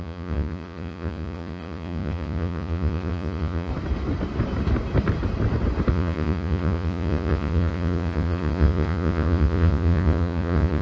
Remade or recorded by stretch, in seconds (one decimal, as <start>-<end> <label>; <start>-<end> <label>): 0.0-3.7 remade; 3.7-5.9 recorded; 5.9-10.8 remade